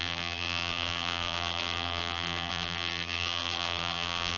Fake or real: fake